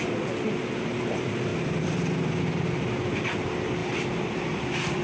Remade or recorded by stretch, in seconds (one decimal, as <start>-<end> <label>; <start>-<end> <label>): 0.0-3.8 recorded; 3.8-5.0 remade